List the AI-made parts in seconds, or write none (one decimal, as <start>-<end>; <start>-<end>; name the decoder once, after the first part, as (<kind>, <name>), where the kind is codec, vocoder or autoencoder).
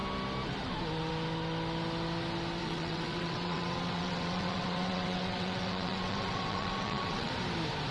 2.6-7.3 (vocoder, WaveNeXt)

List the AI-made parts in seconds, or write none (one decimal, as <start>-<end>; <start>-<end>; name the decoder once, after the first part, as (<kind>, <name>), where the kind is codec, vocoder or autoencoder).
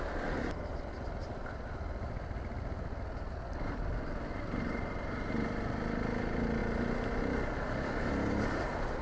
none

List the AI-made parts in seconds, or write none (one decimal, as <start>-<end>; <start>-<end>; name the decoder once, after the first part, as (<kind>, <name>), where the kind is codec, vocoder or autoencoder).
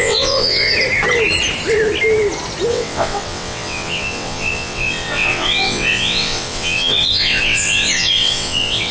0.0-0.7 (vocoder, WaveNeXt); 2.7-8.9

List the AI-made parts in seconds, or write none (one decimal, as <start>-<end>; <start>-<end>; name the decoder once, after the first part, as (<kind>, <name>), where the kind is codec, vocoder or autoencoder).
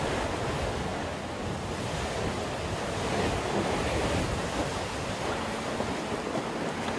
none